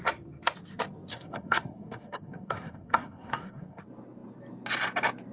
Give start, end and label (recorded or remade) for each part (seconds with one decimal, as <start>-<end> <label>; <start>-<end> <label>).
0.0-1.1 recorded; 1.1-3.8 remade; 3.8-5.3 recorded